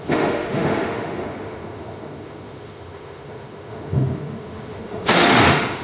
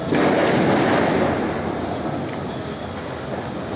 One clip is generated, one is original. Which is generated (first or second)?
first